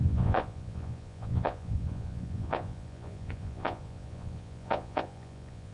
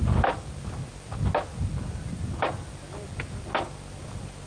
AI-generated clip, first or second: first